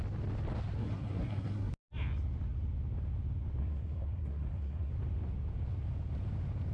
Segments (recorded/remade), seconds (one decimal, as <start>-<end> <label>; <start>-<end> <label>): 0.0-0.8 recorded; 0.8-1.7 remade; 1.7-3.6 recorded; 3.6-4.9 remade; 4.9-6.7 recorded